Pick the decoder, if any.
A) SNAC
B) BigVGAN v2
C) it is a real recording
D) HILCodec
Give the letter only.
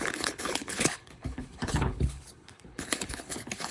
D